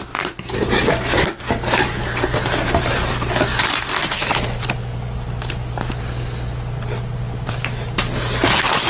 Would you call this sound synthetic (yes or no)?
no